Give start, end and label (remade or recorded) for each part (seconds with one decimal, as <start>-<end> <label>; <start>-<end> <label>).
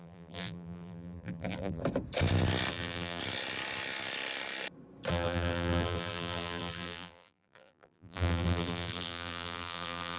0.0-1.8 remade; 1.8-2.7 recorded; 2.7-3.2 remade; 3.2-5.1 recorded; 5.1-10.2 remade